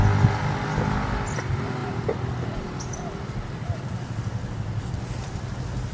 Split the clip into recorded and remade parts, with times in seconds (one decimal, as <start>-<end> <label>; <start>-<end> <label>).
0.0-5.9 recorded